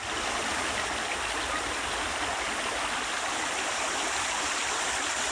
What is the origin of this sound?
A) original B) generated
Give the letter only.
A